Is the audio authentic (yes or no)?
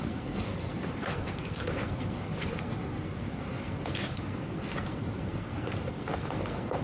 no